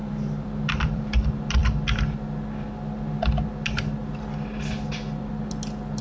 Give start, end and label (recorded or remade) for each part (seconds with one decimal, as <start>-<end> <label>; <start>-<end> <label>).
0.0-1.0 remade; 1.0-6.0 recorded